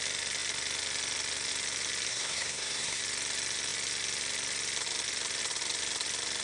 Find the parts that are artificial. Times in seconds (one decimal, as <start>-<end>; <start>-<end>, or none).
2.1-3.0